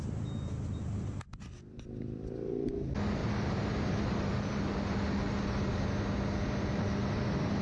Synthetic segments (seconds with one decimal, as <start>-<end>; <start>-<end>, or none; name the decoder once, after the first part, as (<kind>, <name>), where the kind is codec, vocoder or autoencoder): none